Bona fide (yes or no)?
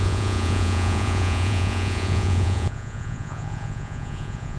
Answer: no